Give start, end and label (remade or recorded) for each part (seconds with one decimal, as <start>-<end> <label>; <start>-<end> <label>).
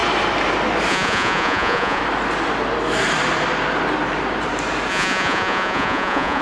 0.0-0.9 recorded; 0.9-2.0 remade; 2.0-4.9 recorded; 4.9-6.4 remade